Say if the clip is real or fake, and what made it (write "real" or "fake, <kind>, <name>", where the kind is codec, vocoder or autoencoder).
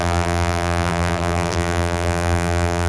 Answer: fake, vocoder, BigVGAN v2